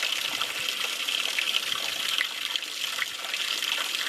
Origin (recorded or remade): recorded